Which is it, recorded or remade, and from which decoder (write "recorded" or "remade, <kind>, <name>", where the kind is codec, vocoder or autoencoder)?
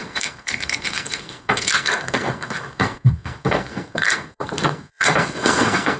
remade, codec, SNAC